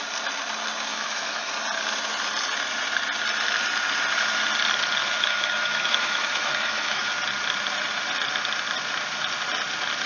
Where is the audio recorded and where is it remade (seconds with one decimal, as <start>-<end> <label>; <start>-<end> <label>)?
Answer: 0.0-0.9 recorded; 0.9-1.5 remade; 1.5-5.0 recorded; 5.0-7.1 remade; 7.1-10.1 recorded